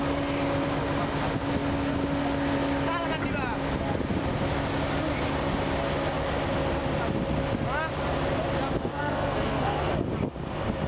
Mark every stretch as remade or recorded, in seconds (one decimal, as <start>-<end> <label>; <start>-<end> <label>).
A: 0.0-8.9 recorded; 8.9-9.9 remade; 9.9-10.9 recorded